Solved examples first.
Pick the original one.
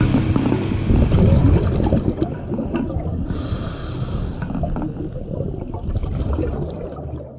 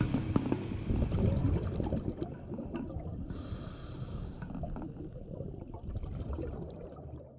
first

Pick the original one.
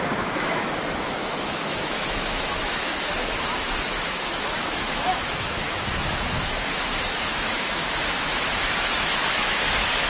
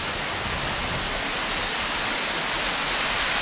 second